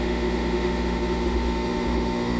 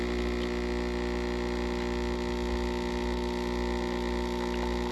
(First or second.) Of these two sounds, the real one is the second